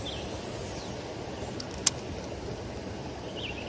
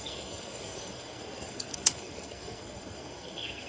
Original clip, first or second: first